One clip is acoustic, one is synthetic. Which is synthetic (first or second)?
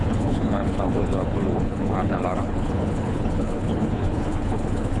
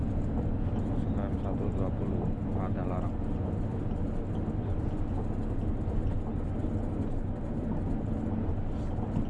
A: first